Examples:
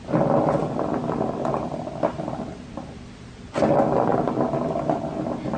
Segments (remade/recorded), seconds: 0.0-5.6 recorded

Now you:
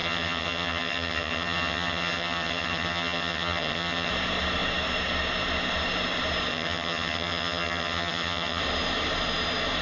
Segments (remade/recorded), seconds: 0.0-4.1 remade; 4.1-6.5 recorded; 6.5-8.6 remade; 8.6-9.8 recorded

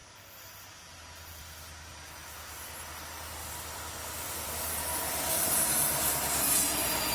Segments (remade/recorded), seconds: 0.0-3.4 recorded; 3.4-5.0 remade; 5.0-7.1 recorded

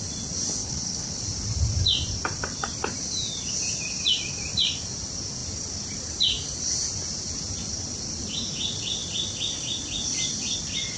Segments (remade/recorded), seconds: 0.0-0.6 recorded; 0.6-1.2 remade; 1.2-11.0 recorded

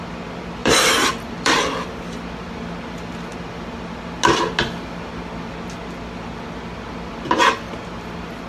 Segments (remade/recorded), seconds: 0.0-0.6 recorded; 0.6-1.6 remade; 1.6-8.5 recorded

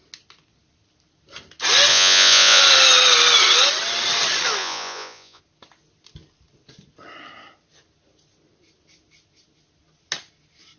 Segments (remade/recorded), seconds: 0.0-1.9 recorded; 1.9-2.6 remade; 2.6-4.6 recorded; 4.6-5.4 remade; 5.4-10.8 recorded

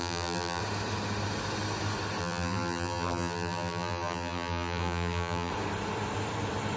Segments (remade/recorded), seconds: 0.0-0.6 remade; 0.6-2.2 recorded; 2.2-5.5 remade; 5.5-6.8 recorded

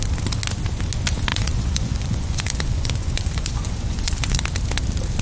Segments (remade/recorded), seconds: 0.0-1.3 recorded; 1.3-4.4 remade; 4.4-5.2 recorded